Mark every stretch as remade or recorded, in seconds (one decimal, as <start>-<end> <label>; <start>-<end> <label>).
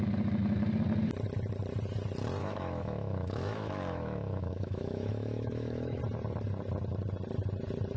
0.0-2.4 recorded; 2.4-6.0 remade; 6.0-8.0 recorded